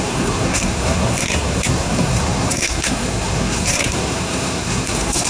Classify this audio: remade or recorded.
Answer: remade